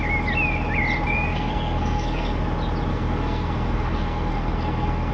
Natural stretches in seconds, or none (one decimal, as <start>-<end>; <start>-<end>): 0.0-1.3; 2.4-2.9